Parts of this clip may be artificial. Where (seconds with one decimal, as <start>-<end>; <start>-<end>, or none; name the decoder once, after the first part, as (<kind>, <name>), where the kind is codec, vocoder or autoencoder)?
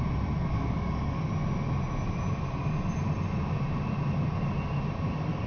0.5-1.3 (codec, DAC)